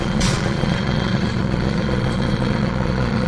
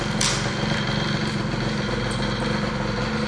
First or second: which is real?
second